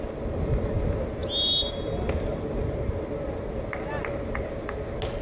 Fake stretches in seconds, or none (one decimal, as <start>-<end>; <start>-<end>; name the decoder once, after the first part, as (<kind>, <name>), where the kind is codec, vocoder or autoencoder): none